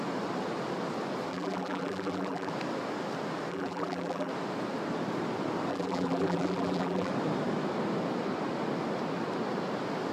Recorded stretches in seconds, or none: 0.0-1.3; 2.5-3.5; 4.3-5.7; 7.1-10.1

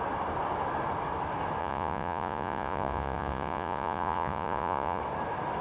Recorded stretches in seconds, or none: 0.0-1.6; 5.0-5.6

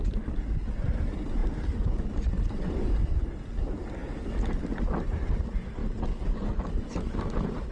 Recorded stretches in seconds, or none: 1.4-3.0; 4.0-4.6; 5.8-6.6

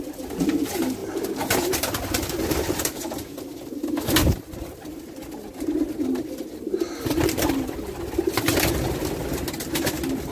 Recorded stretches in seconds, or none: 0.0-10.3

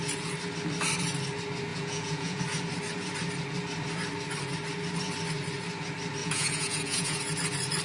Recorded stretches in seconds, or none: 0.0-1.7; 2.4-6.2; 7.2-7.8

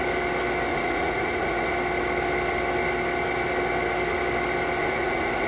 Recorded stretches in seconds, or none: 0.0-0.7; 1.7-4.8

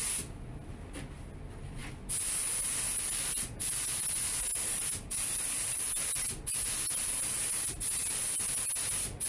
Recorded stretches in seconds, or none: 0.0-4.5; 5.9-9.3